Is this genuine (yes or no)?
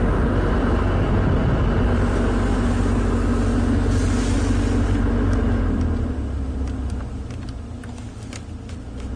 yes